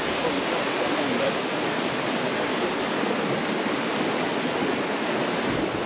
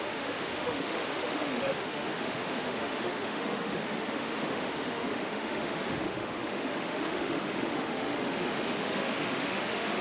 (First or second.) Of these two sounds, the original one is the first